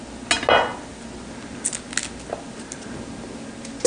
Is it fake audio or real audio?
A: real